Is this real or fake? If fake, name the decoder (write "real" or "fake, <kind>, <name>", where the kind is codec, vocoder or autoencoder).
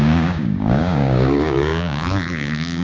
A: fake, codec, DAC